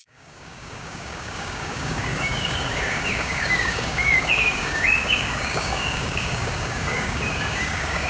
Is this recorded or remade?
remade